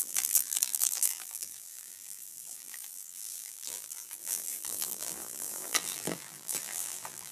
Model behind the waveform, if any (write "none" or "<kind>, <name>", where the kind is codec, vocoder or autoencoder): vocoder, BigVGAN v2